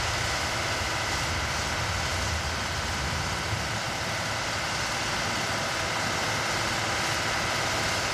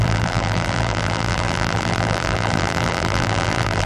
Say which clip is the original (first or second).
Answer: first